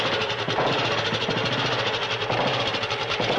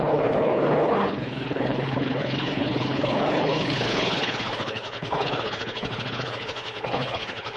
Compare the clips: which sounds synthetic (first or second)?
second